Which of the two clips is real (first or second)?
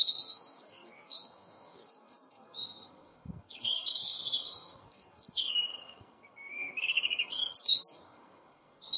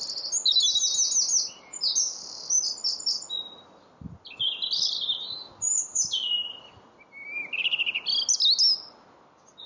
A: second